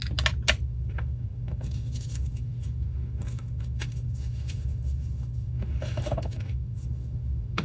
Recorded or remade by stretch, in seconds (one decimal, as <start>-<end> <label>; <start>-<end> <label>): 0.0-0.6 recorded; 0.6-7.6 remade